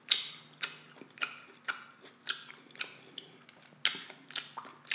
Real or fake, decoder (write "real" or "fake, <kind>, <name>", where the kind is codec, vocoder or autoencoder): real